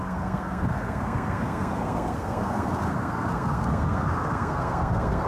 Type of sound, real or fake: fake